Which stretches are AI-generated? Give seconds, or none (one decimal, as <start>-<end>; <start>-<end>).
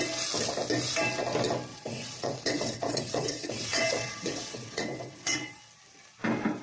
1.7-5.6